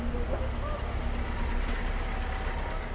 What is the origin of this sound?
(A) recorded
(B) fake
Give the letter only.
A